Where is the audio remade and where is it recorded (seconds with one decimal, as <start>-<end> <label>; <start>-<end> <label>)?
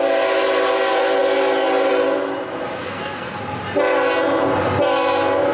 0.0-2.8 recorded; 2.8-3.4 remade; 3.4-5.5 recorded